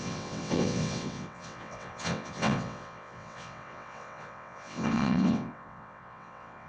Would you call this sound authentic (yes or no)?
no